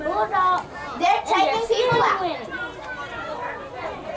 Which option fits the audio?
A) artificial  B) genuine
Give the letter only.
B